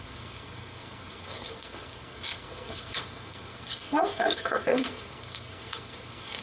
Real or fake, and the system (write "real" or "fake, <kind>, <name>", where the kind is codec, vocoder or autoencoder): fake, codec, SNAC